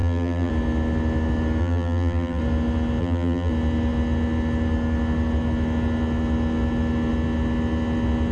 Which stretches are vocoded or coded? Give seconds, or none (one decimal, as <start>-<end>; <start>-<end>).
0.0-0.5; 1.6-2.4; 3.0-3.5